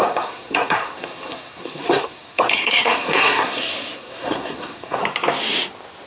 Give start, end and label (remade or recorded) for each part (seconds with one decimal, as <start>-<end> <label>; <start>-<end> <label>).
0.0-5.0 remade; 5.0-6.1 recorded

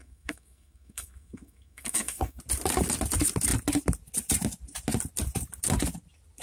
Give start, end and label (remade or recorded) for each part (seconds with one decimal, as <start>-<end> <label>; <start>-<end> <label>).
0.0-2.4 remade; 2.4-6.4 recorded